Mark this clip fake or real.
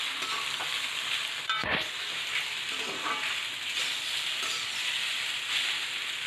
real